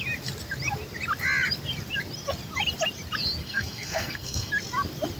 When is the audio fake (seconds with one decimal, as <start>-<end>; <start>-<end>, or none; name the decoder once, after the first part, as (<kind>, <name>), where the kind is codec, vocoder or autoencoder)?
3.4-4.5 (codec, SNAC)